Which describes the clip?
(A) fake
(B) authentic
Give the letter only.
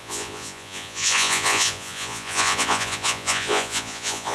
A